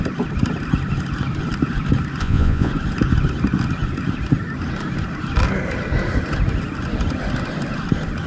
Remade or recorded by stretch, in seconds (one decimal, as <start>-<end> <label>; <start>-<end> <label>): 0.0-2.2 recorded; 2.2-2.7 remade; 2.7-8.3 recorded